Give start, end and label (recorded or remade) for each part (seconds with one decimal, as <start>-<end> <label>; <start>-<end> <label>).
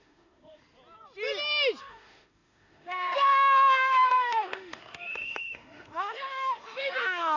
0.0-0.6 remade; 0.6-1.8 recorded; 1.8-7.4 remade